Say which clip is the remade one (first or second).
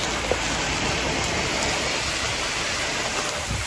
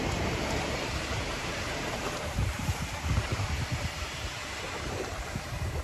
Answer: second